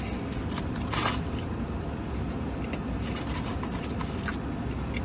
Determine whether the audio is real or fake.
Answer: real